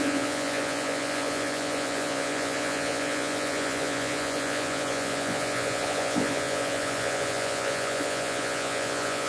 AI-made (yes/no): yes